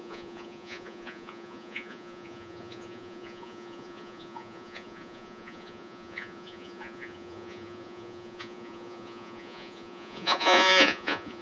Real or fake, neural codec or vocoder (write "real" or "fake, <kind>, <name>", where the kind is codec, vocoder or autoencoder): fake, vocoder, Vocos